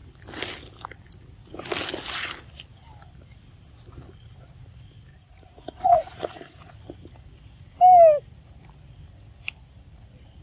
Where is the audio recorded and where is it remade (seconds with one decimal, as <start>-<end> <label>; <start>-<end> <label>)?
0.0-5.1 recorded; 5.1-6.7 remade; 6.7-10.4 recorded